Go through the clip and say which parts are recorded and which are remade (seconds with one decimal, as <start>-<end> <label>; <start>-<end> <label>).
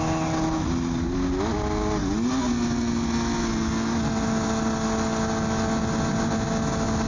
0.0-7.1 recorded